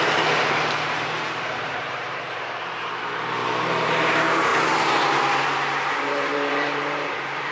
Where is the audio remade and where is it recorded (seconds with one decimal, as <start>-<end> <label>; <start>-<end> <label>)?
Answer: 0.0-4.5 remade; 4.5-6.0 recorded; 6.0-7.5 remade